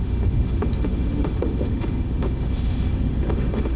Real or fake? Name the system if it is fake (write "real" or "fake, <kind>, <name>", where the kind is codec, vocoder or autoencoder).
fake, autoencoder, DAC-VAE